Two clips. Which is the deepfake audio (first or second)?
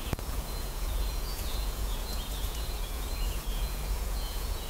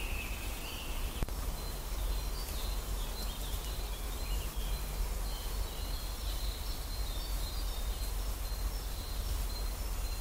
first